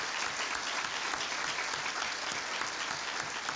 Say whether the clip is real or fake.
real